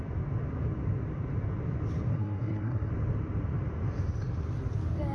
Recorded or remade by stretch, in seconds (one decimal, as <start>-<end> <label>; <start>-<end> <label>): 0.0-2.1 recorded; 2.1-2.9 remade; 2.9-5.1 recorded